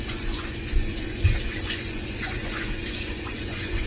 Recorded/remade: remade